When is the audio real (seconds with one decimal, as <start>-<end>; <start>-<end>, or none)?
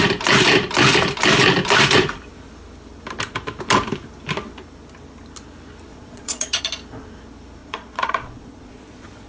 0.0-5.9; 6.6-7.6